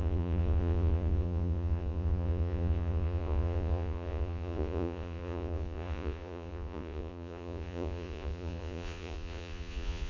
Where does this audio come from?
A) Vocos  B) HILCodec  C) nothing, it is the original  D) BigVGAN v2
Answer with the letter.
A